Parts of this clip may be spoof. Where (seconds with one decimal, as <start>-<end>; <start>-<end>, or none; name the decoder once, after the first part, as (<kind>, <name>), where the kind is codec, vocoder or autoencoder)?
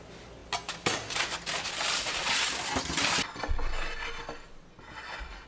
none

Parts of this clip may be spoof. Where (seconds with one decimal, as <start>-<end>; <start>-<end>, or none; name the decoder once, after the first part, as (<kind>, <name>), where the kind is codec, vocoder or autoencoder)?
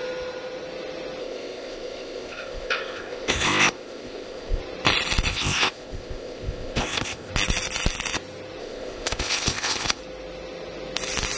1.2-4.6 (codec, ZipCodec); 5.3-7.3; 8.6-10.0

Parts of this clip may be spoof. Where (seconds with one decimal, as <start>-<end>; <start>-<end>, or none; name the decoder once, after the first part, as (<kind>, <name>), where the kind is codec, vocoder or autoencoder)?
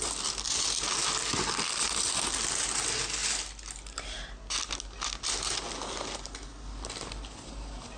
none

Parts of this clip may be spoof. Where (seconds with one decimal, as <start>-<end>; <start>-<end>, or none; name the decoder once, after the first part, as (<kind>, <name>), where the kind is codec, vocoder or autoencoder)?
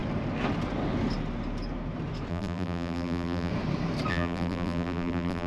2.3-3.5 (vocoder, BigVGAN v2); 4.1-5.5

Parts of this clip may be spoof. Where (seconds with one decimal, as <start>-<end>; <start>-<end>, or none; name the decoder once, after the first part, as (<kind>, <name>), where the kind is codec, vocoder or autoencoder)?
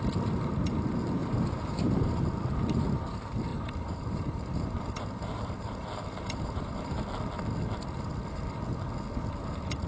1.2-2.2 (vocoder, BigVGAN v2); 3.5-7.0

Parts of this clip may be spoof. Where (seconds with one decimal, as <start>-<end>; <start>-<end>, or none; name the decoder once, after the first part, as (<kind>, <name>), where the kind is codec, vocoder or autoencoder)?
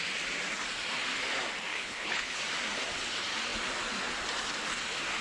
1.7-2.4 (codec, HILCodec)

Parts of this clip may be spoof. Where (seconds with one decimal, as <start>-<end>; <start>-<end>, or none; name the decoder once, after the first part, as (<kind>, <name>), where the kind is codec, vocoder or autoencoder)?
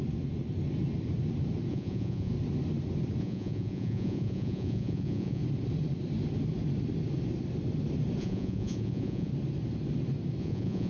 1.7-2.3 (vocoder, Vocos); 3.2-5.4; 8.2-9.3; 10.4-10.9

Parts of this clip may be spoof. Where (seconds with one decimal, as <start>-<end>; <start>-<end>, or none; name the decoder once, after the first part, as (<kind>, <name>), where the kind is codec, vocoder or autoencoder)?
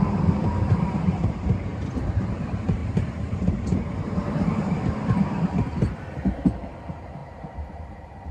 0.0-2.8 (vocoder, BigVGAN v2); 6.3-8.3